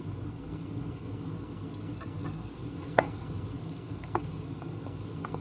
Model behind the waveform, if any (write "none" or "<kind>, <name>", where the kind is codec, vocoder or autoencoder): codec, SNAC